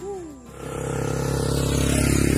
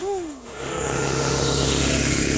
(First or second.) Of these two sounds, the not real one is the second